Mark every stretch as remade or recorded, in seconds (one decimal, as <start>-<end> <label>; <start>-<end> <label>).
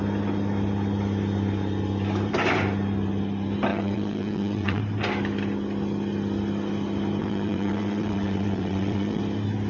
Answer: 0.0-3.7 recorded; 3.7-4.8 remade; 4.8-7.2 recorded; 7.2-9.2 remade; 9.2-9.7 recorded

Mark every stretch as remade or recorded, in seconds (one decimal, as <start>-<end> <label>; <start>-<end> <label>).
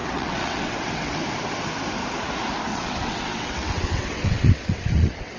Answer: 0.0-1.2 remade; 1.2-2.7 recorded; 2.7-5.4 remade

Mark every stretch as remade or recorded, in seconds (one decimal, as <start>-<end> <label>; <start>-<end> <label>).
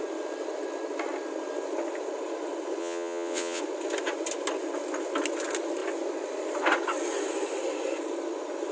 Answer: 0.0-2.8 recorded; 2.8-3.6 remade; 3.6-8.7 recorded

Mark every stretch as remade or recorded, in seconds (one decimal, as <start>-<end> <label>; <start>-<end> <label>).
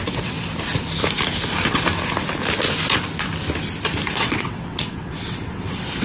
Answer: 0.0-0.5 remade; 0.5-4.1 recorded; 4.1-6.0 remade